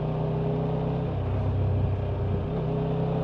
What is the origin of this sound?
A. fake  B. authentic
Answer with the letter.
B